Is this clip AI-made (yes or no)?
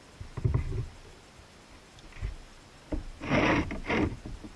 no